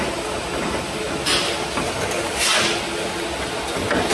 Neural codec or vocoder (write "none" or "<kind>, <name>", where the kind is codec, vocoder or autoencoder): none